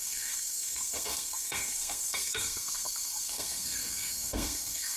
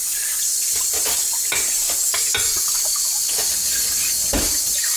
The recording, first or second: second